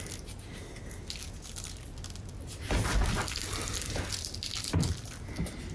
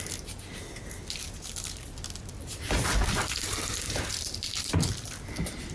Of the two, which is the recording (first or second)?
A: first